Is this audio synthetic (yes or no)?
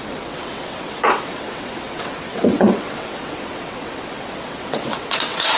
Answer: yes